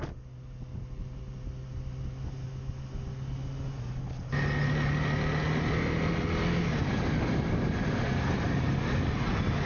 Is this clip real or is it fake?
real